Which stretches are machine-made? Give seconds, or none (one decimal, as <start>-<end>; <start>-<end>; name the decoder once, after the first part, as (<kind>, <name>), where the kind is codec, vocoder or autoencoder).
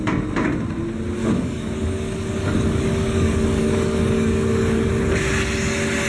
1.2-4.9 (codec, DAC)